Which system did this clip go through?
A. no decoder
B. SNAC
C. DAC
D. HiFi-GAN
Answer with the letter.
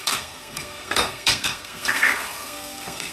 B